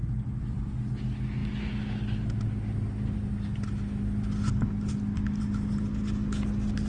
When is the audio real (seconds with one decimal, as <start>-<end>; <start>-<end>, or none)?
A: 0.7-6.9